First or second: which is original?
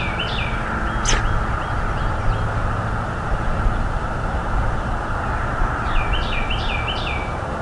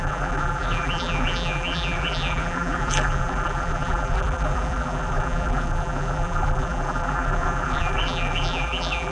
first